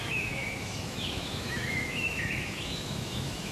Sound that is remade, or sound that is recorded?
remade